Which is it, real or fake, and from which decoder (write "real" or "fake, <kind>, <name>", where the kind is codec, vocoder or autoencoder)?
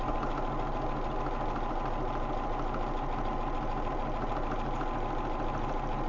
real